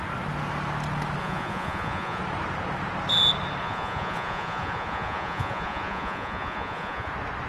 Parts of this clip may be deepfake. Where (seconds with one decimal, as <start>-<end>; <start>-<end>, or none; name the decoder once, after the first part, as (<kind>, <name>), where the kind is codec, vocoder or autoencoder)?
1.2-2.2 (vocoder, Vocos); 3.6-7.1